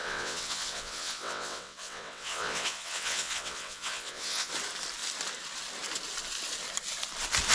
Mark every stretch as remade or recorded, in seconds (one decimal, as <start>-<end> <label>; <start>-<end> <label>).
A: 0.0-4.5 remade; 4.5-7.5 recorded